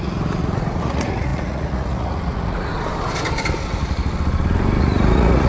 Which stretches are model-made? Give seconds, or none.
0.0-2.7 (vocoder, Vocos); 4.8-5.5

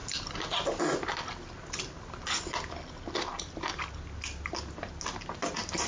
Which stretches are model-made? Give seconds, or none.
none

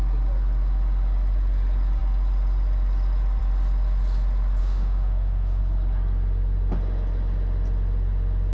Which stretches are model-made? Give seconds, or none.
4.6-5.6 (autoencoder, DAC-VAE)

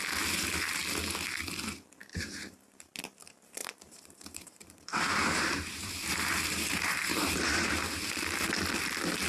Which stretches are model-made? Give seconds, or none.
2.0-2.7 (vocoder, BigVGAN v2); 3.6-8.1